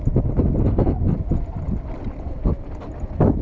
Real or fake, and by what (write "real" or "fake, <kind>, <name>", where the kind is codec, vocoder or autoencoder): real